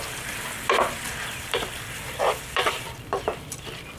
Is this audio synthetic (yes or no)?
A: yes